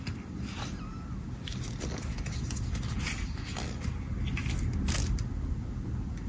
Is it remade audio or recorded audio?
recorded